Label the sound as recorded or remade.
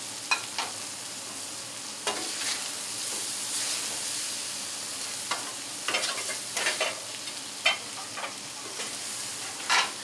recorded